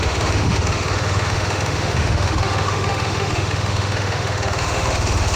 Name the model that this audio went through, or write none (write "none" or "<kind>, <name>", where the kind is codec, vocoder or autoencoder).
autoencoder, DAC-VAE